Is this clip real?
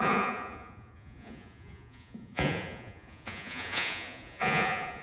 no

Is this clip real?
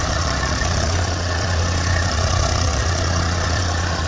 no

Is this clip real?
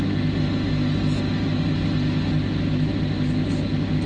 yes